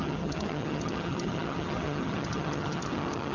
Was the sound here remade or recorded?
remade